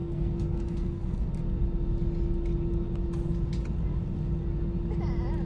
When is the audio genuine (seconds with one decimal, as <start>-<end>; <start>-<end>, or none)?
1.3-5.5